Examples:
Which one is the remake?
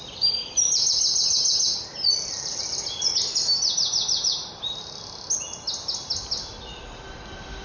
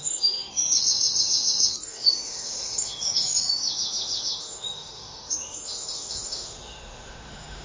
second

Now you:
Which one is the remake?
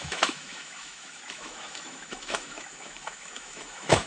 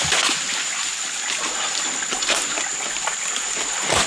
first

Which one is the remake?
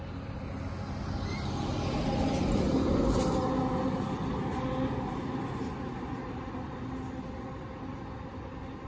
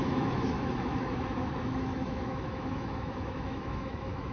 second